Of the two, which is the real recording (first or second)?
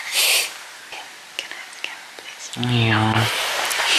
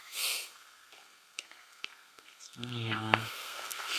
first